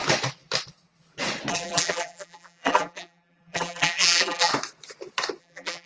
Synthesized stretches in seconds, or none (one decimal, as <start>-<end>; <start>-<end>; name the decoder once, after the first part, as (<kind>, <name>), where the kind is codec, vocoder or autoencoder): 1.5-4.5 (vocoder, BigVGAN v2); 5.4-5.9